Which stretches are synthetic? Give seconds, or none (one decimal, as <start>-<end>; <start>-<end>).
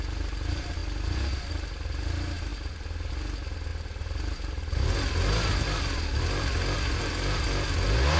none